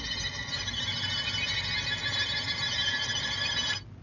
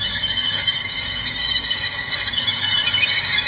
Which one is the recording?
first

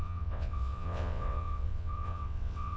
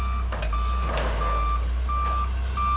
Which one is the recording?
second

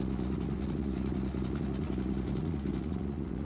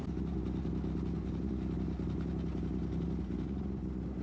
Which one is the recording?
second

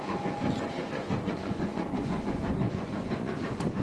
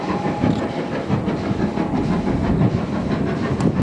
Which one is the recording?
second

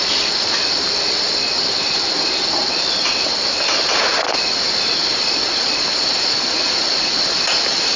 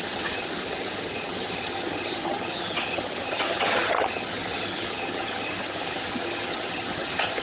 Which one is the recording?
first